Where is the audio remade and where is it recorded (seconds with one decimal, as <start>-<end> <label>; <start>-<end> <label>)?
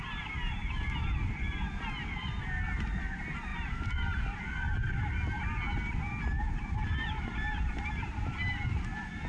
0.0-3.5 recorded; 3.5-4.2 remade; 4.2-6.4 recorded; 6.4-8.3 remade; 8.3-9.3 recorded